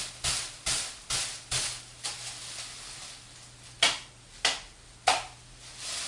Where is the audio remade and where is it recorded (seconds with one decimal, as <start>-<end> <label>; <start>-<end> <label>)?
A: 0.0-6.1 recorded